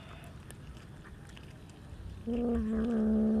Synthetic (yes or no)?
no